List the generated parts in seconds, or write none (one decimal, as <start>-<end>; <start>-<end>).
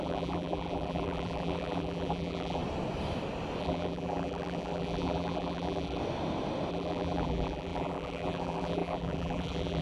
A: 0.0-2.6; 3.6-6.0; 6.7-9.8